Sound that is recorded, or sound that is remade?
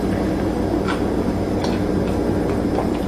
recorded